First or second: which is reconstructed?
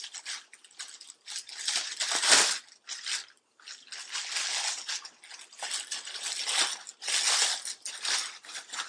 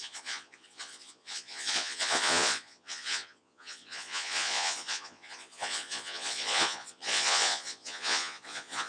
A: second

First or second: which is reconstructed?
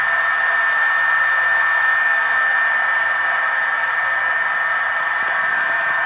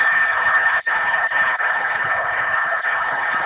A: second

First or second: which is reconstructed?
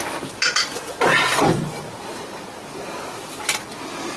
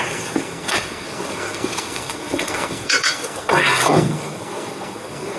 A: second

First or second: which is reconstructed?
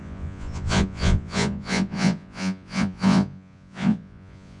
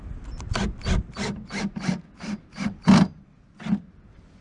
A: first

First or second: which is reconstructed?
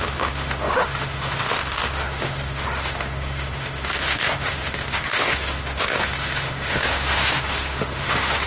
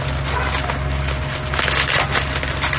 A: first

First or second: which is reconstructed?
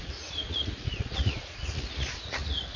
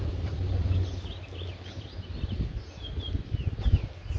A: first